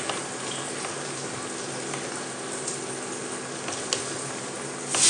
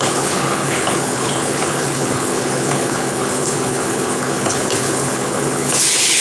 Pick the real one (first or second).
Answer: first